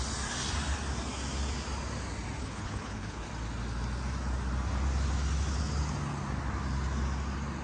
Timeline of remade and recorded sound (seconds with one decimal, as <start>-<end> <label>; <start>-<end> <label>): 0.0-2.4 recorded; 2.4-3.3 remade; 3.3-7.6 recorded